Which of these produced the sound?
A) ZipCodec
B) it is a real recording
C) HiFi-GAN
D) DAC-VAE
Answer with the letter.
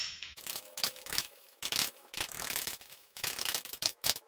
D